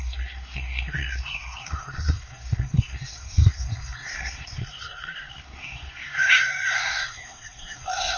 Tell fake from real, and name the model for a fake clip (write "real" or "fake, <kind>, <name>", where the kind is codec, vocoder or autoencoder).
fake, codec, SNAC